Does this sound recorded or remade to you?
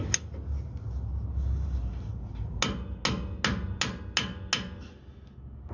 recorded